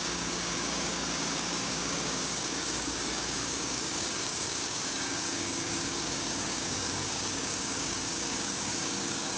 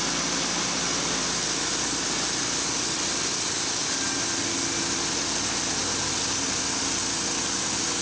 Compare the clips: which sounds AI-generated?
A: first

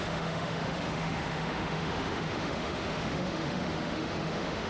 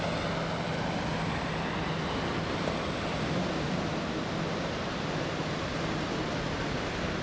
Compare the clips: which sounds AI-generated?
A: first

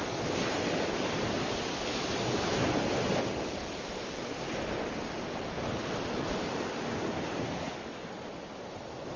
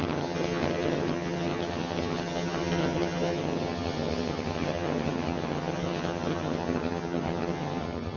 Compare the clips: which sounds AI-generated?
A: second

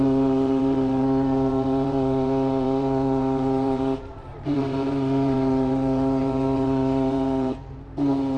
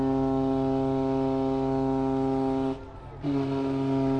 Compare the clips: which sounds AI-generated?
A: first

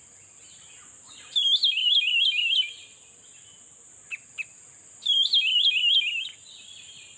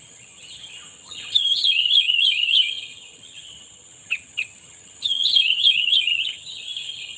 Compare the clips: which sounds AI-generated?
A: second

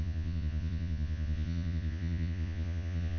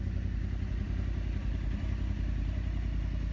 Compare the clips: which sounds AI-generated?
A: first